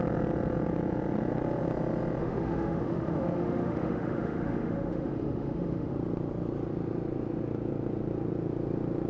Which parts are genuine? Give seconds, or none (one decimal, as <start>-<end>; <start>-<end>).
0.0-2.2; 5.9-9.1